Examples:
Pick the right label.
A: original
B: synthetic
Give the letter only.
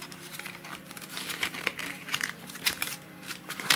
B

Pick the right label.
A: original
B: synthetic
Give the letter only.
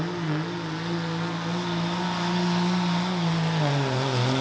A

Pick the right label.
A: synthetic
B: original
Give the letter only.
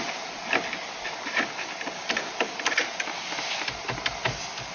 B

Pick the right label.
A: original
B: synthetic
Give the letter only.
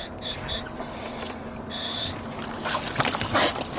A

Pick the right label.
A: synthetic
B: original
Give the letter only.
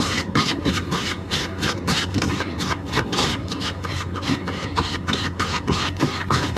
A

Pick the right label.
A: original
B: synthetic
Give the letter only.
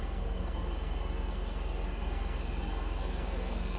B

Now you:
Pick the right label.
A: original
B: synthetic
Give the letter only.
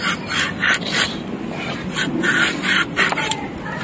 A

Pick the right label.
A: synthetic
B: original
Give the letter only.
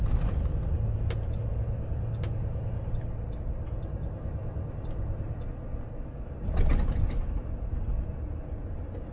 B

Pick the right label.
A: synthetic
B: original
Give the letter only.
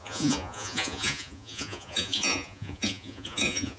A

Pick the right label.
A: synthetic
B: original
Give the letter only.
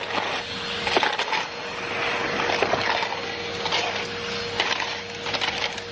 B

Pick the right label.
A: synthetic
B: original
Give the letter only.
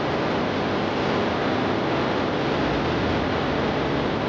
B